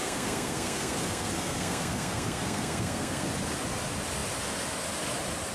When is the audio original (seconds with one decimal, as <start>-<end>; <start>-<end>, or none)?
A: 3.3-5.5